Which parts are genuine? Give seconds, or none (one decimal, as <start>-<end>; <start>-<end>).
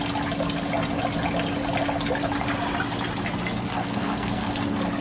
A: 0.0-3.7; 4.5-5.0